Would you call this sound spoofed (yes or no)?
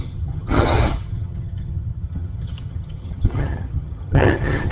yes